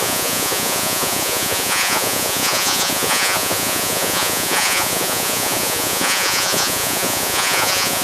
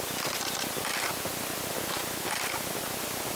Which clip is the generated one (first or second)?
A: first